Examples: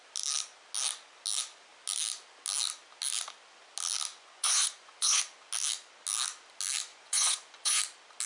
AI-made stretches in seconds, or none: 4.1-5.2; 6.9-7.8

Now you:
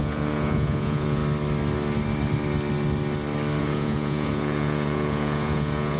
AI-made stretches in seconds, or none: 0.0-1.2; 3.6-6.0